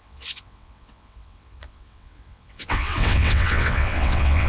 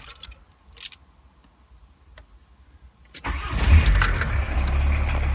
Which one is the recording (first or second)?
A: second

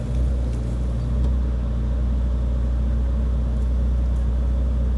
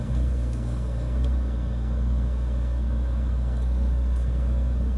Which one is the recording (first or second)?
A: first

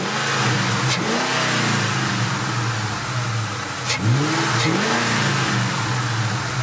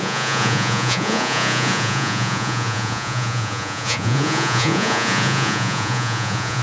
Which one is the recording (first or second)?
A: first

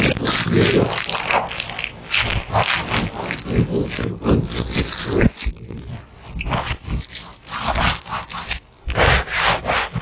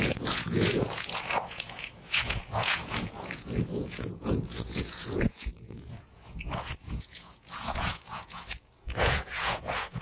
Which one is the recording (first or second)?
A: first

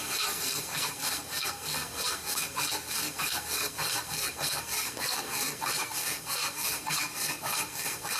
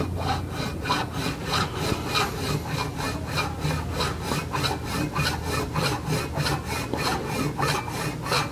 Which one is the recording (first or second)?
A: second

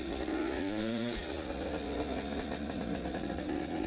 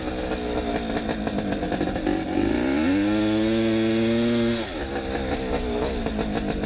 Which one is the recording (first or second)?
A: second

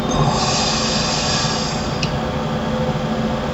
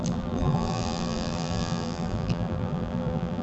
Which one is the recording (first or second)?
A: first